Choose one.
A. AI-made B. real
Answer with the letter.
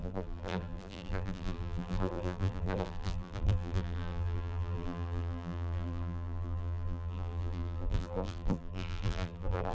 A